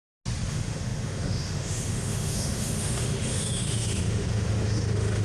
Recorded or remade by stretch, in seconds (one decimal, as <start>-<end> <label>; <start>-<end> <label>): 0.0-0.5 recorded; 0.5-5.2 remade